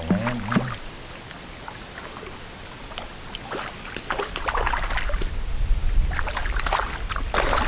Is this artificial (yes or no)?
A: no